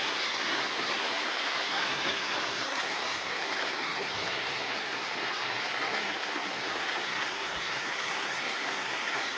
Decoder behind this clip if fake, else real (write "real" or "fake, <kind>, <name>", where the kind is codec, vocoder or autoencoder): fake, codec, SNAC